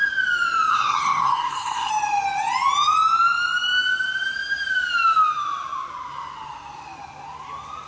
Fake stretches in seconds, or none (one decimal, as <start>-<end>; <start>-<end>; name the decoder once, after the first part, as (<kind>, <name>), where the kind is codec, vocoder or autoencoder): 0.7-1.9 (codec, SNAC)